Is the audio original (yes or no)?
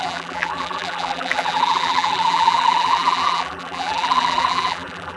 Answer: no